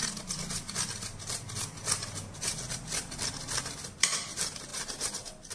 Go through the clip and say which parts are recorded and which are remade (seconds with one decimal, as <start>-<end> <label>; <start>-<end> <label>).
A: 0.0-5.5 recorded